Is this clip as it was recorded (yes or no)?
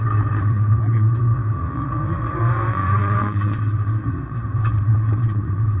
no